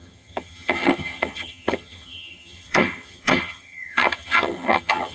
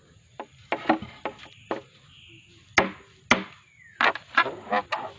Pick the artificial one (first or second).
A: first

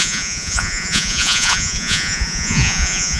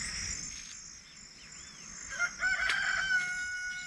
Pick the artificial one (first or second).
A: first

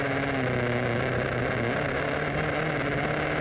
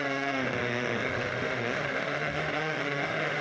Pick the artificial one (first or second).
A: second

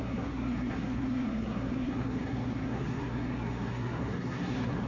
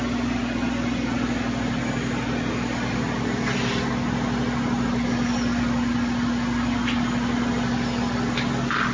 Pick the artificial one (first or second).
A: first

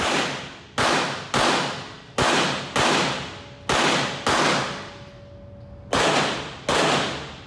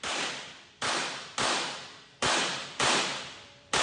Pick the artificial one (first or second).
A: second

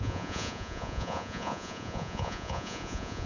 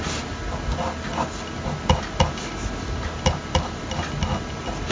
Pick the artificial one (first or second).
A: first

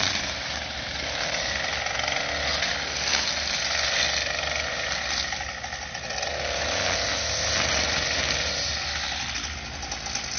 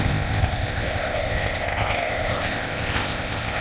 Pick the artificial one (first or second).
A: second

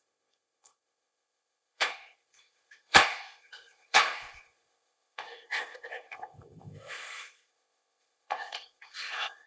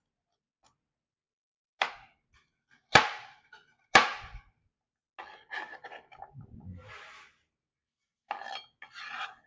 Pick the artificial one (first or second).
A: first